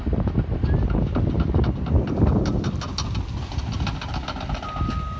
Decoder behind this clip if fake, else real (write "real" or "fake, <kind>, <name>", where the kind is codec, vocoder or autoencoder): real